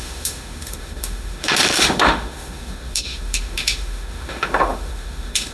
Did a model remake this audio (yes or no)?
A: yes